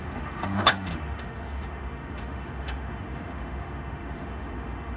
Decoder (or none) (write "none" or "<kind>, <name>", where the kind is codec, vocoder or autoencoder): autoencoder, DAC-VAE